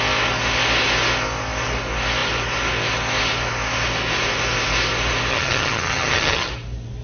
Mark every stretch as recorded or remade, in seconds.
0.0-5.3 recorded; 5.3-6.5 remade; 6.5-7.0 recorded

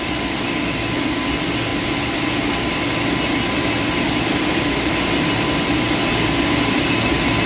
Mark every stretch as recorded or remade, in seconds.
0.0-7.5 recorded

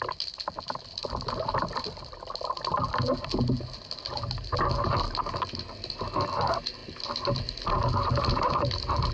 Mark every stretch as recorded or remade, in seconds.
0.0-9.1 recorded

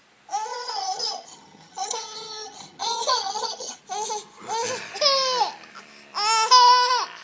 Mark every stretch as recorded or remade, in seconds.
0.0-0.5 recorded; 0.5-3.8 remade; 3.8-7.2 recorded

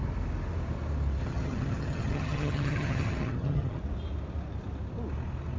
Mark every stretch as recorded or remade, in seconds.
0.0-1.2 recorded; 1.2-3.8 remade; 3.8-5.6 recorded

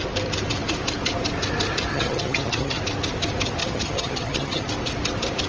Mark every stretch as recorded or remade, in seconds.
0.0-1.9 recorded; 1.9-2.8 remade; 2.8-3.6 recorded; 3.6-4.7 remade; 4.7-5.5 recorded